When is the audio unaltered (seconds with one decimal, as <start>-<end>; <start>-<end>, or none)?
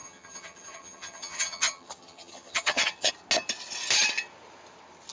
3.1-5.1